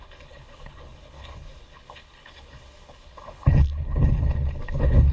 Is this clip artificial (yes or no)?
yes